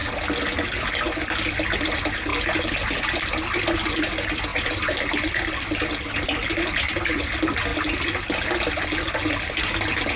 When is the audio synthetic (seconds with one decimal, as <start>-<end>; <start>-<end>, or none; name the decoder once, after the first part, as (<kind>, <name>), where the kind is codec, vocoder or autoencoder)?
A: 4.5-5.8 (vocoder, BigVGAN v2)